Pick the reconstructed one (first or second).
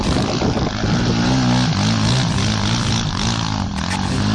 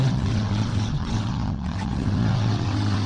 second